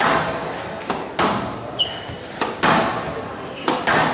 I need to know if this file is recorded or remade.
recorded